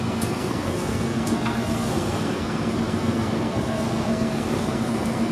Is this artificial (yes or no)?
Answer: yes